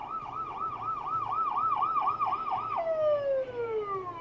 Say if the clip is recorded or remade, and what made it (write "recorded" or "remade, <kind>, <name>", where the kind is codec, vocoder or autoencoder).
recorded